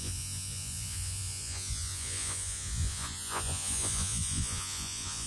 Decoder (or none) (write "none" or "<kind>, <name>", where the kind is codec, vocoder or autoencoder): vocoder, Vocos